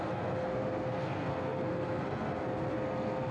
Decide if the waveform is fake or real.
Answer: fake